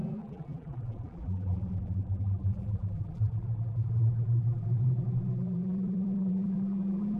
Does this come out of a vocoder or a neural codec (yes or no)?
yes